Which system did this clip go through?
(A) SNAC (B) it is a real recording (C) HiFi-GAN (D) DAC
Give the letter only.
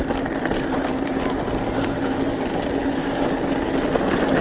B